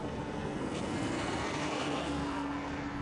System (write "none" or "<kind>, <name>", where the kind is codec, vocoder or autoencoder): codec, SNAC